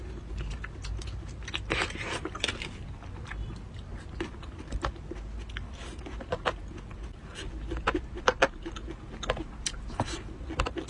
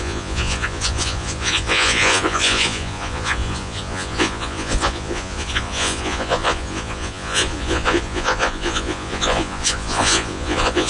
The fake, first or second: second